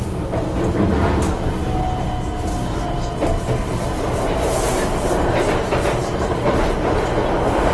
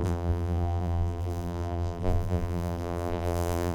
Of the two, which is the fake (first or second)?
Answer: second